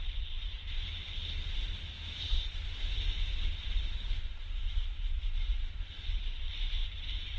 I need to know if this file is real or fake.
real